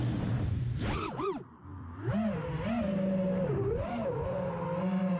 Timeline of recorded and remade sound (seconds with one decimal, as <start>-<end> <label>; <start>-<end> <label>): 0.0-1.2 remade; 1.2-1.7 recorded; 1.7-4.5 remade; 4.5-5.2 recorded